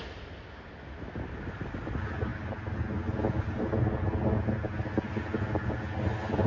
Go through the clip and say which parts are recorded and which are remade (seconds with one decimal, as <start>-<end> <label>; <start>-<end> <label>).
0.0-6.5 recorded